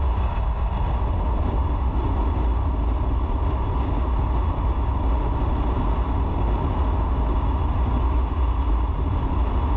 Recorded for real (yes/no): yes